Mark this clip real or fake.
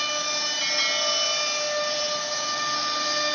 real